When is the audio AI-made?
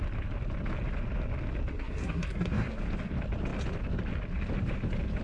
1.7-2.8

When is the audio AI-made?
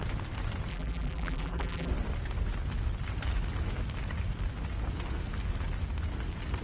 0.7-1.9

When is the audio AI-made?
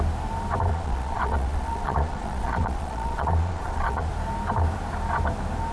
0.7-4.1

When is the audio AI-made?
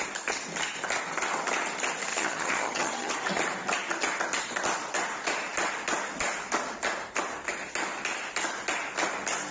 2.1-3.1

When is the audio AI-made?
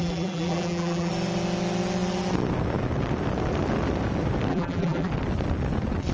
0.0-1.1; 4.5-5.1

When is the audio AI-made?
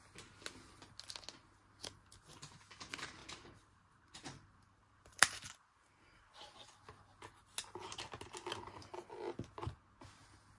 3.2-6.3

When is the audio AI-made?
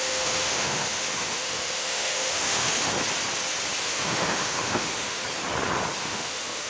0.0-2.9; 3.8-5.2; 6.0-6.7